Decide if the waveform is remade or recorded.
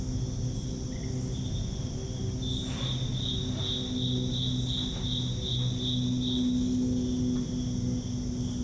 recorded